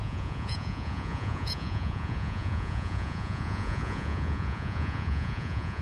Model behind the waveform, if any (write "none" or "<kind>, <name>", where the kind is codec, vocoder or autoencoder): vocoder, Vocos